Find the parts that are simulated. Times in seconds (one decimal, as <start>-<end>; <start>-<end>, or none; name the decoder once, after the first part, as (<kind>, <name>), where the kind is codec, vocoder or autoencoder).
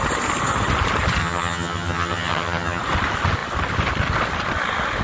1.2-2.8 (vocoder, HiFi-GAN)